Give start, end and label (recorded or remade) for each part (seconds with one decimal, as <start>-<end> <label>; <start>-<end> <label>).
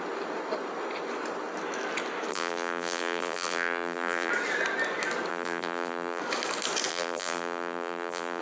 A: 0.0-2.3 recorded; 2.3-4.3 remade; 4.3-5.3 recorded; 5.3-6.2 remade; 6.2-6.9 recorded; 6.9-8.4 remade